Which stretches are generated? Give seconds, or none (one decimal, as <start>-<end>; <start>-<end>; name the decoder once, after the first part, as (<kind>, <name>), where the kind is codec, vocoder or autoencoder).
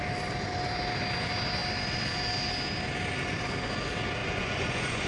4.2-5.1 (vocoder, Vocos)